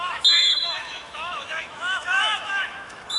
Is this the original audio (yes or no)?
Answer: no